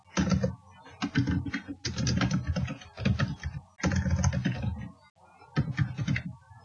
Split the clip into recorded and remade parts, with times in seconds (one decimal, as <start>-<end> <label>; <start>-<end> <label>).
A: 0.0-6.6 recorded